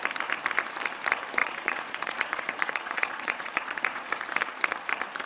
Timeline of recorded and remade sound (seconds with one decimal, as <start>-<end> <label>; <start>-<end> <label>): 0.0-1.4 recorded; 1.4-4.1 remade; 4.1-5.3 recorded